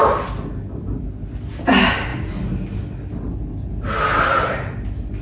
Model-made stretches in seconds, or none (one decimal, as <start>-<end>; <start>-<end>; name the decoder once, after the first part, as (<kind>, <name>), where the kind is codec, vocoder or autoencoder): none